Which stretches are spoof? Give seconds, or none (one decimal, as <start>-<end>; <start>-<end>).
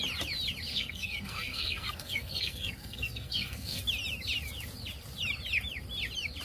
0.7-3.8